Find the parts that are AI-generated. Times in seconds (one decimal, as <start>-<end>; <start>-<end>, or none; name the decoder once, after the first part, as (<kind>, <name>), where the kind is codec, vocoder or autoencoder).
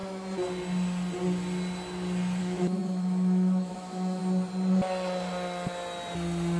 2.4-4.2 (autoencoder, DAC-VAE)